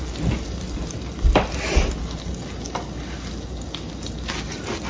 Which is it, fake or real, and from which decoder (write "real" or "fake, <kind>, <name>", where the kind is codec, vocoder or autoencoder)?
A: real